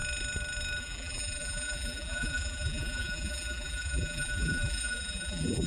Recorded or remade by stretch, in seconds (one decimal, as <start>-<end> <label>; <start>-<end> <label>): 0.0-0.8 recorded; 0.8-5.7 remade